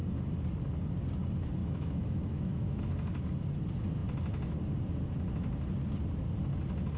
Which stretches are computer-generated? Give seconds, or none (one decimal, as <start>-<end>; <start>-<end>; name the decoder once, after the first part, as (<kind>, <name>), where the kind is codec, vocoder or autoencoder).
1.6-2.8 (autoencoder, DAC-VAE)